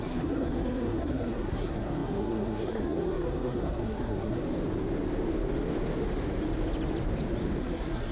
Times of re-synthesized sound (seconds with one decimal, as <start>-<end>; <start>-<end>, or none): 0.0-4.4; 7.6-8.1